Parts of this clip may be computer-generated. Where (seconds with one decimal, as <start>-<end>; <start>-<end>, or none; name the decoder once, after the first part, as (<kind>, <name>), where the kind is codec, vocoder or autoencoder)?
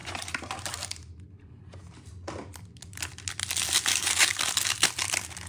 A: 3.9-4.4 (codec, DAC)